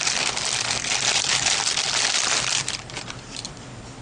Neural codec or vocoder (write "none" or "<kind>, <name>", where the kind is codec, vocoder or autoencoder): vocoder, BigVGAN v2